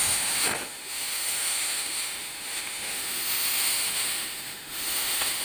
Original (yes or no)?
no